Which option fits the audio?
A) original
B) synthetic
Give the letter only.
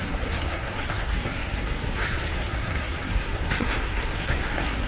B